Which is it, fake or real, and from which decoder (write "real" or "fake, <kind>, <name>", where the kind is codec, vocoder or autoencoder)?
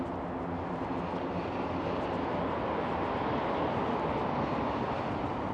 real